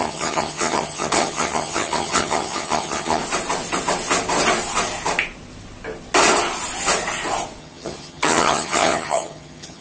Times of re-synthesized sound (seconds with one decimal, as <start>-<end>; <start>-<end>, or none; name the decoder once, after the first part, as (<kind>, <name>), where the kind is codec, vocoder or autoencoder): 0.0-3.2 (vocoder, HiFi-GAN); 7.6-9.8